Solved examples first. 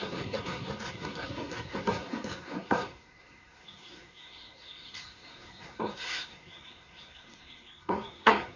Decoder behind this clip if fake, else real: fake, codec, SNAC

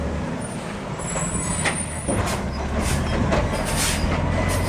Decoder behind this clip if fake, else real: real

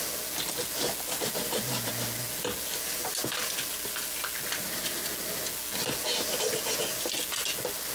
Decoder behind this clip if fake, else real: real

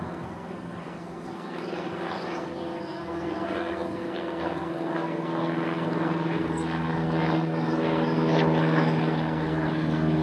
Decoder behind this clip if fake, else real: fake, codec, SNAC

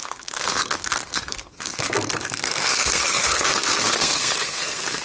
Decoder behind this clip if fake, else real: fake, codec, SNAC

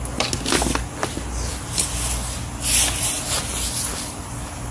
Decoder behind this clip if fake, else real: real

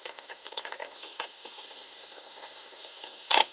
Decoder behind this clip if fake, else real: fake, codec, SNAC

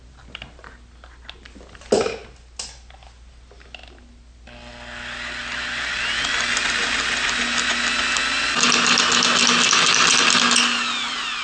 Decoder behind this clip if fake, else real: real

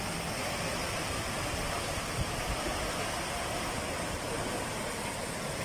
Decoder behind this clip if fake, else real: real